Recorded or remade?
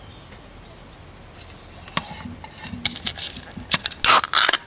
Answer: recorded